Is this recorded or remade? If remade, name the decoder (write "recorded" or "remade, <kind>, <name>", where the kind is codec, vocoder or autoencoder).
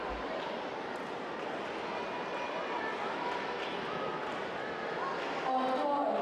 recorded